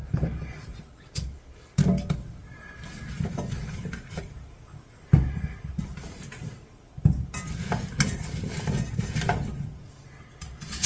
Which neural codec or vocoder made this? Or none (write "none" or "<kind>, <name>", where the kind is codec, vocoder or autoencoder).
none